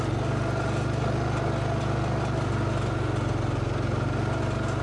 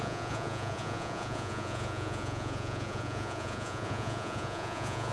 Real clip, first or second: first